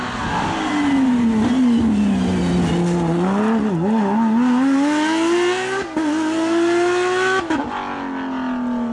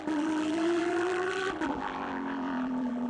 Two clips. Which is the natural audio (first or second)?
first